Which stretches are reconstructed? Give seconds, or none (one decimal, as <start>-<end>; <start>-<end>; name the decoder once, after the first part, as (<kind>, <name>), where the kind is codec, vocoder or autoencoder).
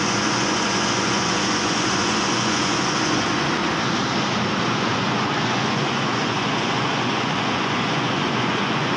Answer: 0.0-3.6 (vocoder, Vocos); 4.6-9.0